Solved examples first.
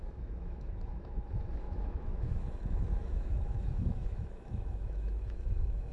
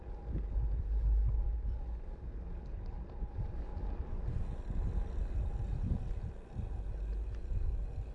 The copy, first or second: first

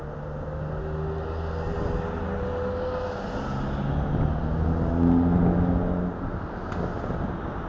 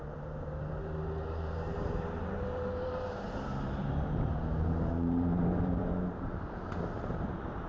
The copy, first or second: second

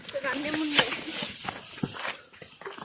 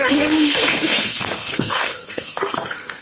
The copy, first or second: second